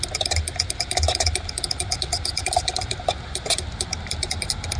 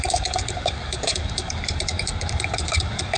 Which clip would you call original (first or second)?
first